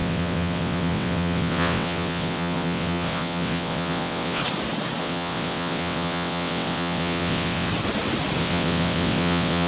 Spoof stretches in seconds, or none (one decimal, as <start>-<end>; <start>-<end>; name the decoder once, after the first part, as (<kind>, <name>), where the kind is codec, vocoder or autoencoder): 0.0-4.4 (vocoder, WaveNeXt); 5.0-7.7; 8.4-9.7